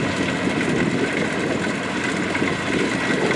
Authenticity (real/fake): real